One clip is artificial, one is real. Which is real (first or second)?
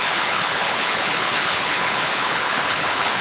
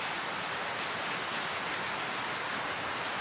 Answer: second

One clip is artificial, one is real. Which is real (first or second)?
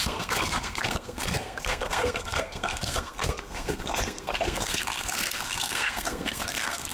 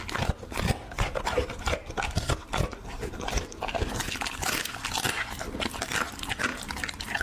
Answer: second